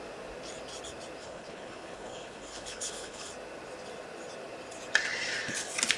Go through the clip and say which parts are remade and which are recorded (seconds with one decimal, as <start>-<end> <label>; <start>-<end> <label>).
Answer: 0.0-1.2 recorded; 1.2-3.3 remade; 3.3-6.0 recorded